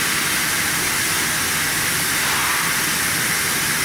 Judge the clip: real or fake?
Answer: real